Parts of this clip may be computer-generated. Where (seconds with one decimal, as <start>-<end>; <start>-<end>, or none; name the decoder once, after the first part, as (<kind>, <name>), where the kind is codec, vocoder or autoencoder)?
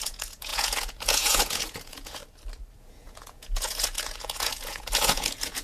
0.0-2.2 (vocoder, Vocos); 2.8-5.6